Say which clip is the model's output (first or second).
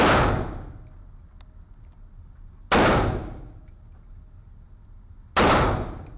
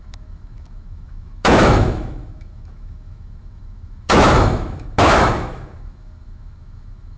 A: second